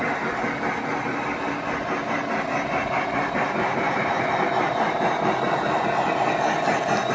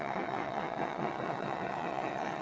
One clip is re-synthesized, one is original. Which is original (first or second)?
first